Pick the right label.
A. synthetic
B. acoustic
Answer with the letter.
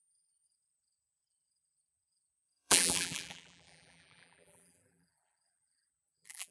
A